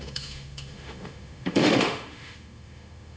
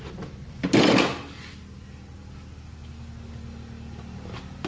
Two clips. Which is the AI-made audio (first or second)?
first